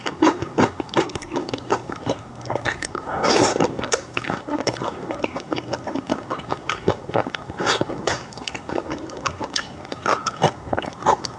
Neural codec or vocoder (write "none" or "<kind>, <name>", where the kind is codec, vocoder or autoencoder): codec, SNAC